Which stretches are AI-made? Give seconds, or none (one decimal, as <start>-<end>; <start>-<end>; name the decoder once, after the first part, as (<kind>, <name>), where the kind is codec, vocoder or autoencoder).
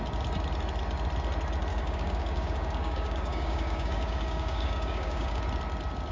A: 1.7-5.4 (codec, DAC)